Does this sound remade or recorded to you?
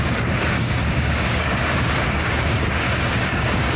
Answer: remade